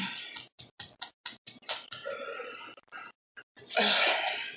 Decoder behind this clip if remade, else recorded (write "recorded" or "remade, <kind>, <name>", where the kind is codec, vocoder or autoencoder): recorded